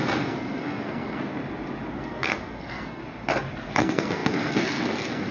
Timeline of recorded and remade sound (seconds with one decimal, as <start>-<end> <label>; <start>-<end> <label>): 0.0-1.4 remade; 1.4-1.9 recorded; 1.9-3.0 remade; 3.0-3.6 recorded; 3.6-5.3 remade